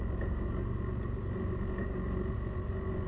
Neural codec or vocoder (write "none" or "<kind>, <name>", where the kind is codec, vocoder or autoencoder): none